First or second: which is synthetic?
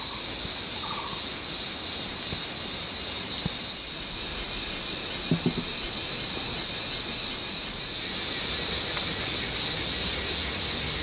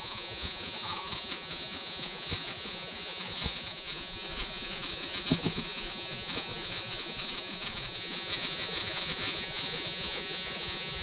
second